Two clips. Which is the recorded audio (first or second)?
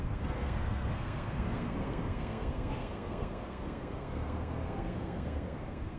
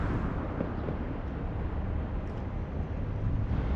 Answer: second